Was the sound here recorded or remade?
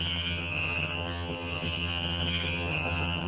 remade